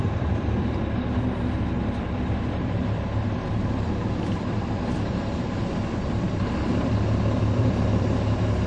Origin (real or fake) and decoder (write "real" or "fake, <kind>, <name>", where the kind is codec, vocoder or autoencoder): fake, vocoder, BigVGAN v2